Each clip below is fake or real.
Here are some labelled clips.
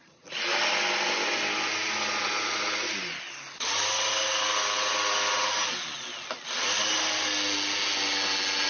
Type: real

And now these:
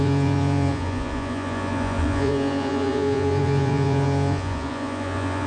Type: fake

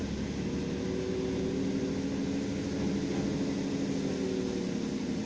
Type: real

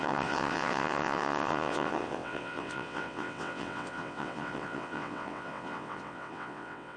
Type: fake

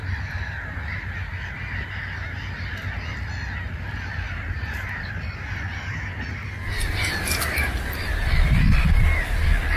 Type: real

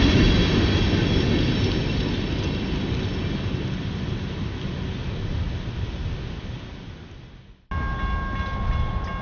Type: real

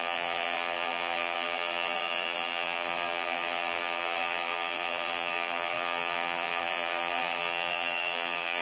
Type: fake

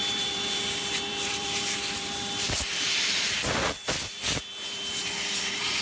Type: fake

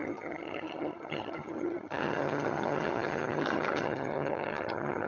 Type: fake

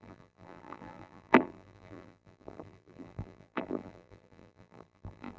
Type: fake